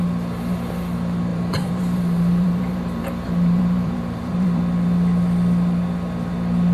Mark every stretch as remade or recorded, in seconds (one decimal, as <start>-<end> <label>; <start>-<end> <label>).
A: 0.0-1.3 recorded; 1.3-4.6 remade; 4.6-6.7 recorded